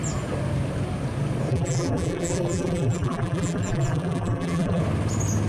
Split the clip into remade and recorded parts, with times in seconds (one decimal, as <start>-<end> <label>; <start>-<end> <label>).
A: 0.0-1.5 recorded; 1.5-4.8 remade; 4.8-5.5 recorded